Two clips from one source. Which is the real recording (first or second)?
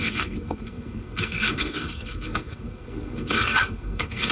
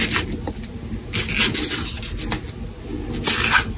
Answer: second